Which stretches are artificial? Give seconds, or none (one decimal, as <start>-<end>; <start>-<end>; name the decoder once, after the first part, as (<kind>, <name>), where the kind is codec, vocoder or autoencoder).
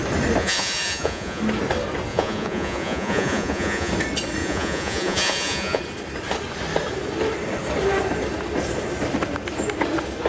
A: 0.4-1.4 (vocoder, Vocos); 2.1-3.9; 4.4-5.8